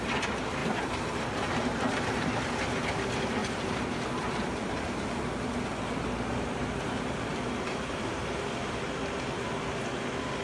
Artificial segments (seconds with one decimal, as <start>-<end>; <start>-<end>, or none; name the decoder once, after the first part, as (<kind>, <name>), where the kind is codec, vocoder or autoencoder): 0.6-2.4 (vocoder, BigVGAN v2); 3.4-5.5; 6.3-8.8